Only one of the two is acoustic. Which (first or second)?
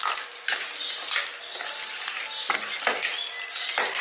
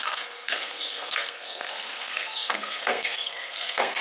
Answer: first